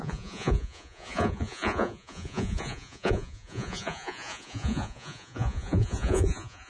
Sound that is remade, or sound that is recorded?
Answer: remade